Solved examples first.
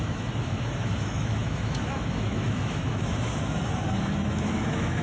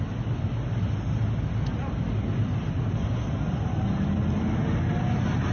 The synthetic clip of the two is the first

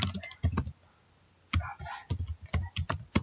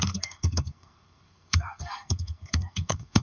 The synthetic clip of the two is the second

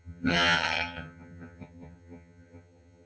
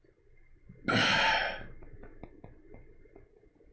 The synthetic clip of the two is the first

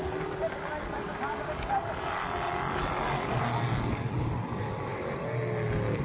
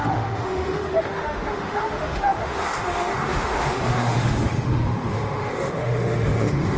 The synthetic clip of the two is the second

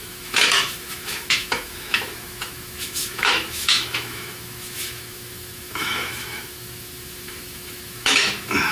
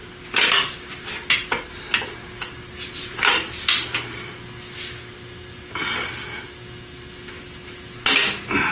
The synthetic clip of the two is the first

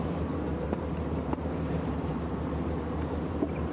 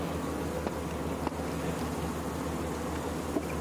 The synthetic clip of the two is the first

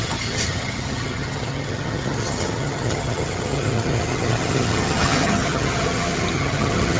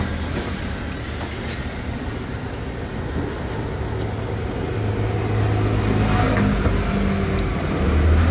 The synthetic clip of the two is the first